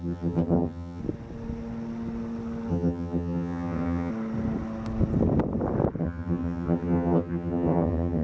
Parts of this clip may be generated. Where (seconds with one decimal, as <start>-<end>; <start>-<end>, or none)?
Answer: 0.0-1.0; 2.7-4.1; 6.0-8.2